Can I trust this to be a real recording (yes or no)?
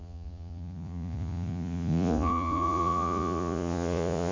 no